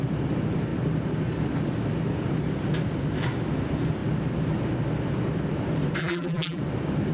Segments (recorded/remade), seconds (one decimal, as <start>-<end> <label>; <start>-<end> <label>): 0.0-6.0 recorded; 6.0-6.6 remade; 6.6-7.1 recorded